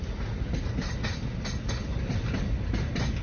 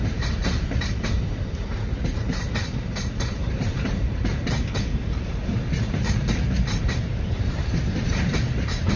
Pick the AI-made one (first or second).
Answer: second